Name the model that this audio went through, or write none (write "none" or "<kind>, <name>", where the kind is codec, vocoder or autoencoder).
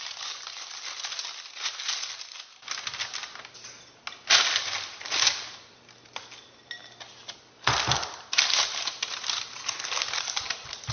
none